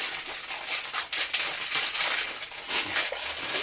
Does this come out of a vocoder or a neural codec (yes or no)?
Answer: no